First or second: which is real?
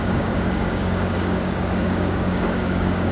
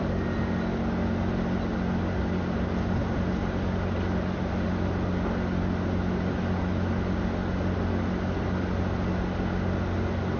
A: second